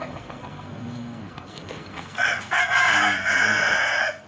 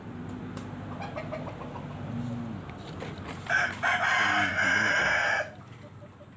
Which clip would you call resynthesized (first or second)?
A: first